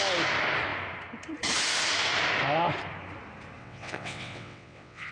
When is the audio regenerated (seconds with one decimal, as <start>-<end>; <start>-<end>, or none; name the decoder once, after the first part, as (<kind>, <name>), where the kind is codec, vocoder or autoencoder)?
3.6-5.1 (vocoder, WaveNeXt)